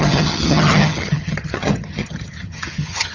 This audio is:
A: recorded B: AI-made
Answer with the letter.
B